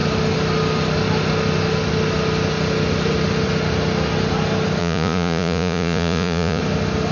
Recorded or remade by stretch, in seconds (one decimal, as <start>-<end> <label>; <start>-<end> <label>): 0.0-4.8 recorded; 4.8-6.6 remade; 6.6-7.1 recorded